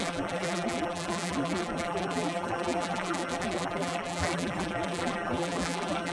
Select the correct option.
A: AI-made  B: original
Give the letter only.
A